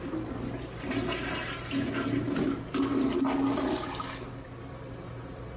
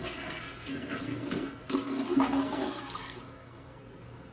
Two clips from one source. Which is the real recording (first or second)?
first